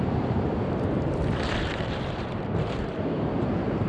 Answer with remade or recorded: remade